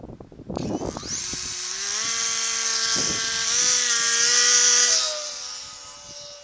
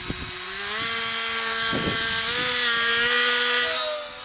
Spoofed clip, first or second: first